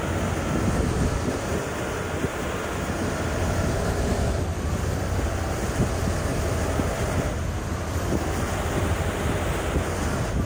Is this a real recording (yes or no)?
yes